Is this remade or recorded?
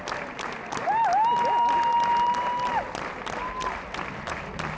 recorded